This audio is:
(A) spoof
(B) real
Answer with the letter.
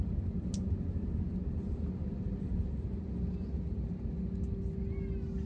B